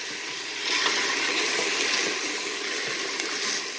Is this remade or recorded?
recorded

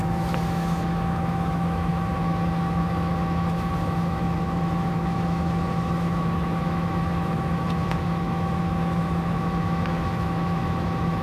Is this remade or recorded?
remade